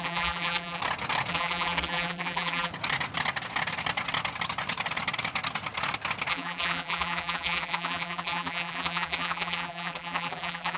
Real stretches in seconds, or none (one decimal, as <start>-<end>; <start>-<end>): 0.8-1.3; 2.7-6.3